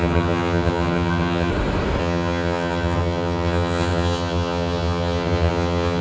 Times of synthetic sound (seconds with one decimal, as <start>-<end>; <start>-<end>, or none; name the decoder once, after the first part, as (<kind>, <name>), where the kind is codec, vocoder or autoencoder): 0.0-1.5 (vocoder, HiFi-GAN); 2.0-6.0